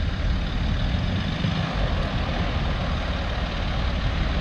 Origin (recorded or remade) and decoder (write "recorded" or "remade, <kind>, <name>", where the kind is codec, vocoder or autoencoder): recorded